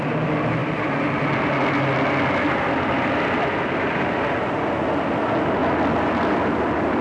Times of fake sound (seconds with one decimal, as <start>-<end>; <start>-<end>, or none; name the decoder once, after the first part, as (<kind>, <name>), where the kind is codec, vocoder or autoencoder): none